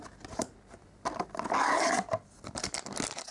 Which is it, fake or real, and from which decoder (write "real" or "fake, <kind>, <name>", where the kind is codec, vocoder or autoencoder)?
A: real